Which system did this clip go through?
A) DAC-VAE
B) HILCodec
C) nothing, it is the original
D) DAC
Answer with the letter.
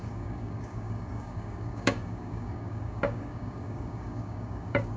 D